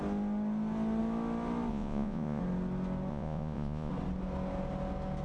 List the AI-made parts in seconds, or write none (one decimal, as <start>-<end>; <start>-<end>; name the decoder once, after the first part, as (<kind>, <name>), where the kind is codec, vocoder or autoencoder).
1.7-2.4 (vocoder, Vocos); 3.1-3.9